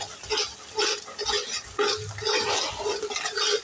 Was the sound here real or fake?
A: real